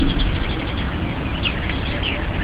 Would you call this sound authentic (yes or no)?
yes